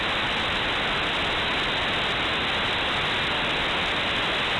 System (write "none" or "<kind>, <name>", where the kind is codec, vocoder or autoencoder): none